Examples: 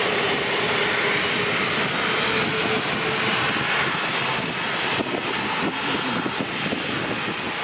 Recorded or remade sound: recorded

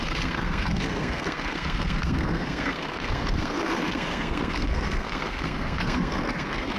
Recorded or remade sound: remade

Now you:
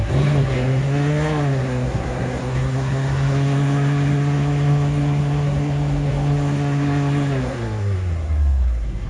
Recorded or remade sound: remade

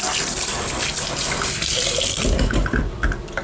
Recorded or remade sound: recorded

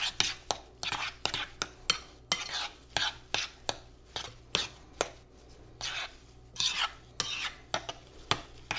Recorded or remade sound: recorded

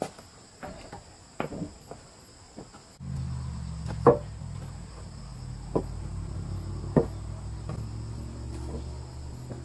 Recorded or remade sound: recorded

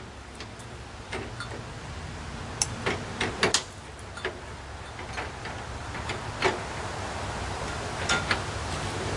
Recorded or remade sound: recorded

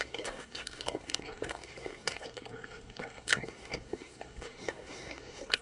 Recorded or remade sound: remade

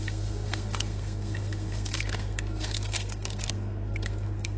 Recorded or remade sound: remade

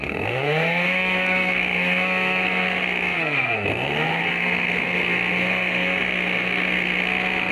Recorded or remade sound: remade